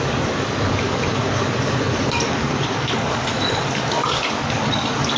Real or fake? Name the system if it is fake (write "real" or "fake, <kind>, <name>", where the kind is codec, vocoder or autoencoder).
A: fake, codec, DAC